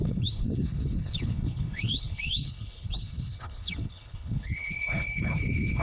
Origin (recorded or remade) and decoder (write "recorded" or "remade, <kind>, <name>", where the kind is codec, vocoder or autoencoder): remade, codec, HILCodec